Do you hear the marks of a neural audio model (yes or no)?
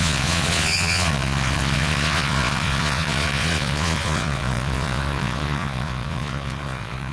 yes